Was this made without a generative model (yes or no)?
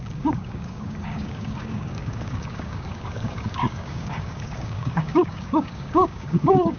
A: no